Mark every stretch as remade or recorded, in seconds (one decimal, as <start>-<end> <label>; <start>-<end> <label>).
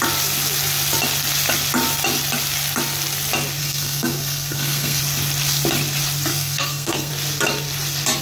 0.0-3.6 recorded; 3.6-5.0 remade; 5.0-6.3 recorded; 6.3-7.1 remade; 7.1-8.2 recorded